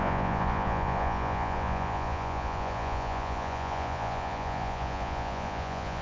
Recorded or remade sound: remade